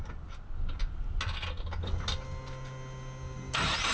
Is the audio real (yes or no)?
yes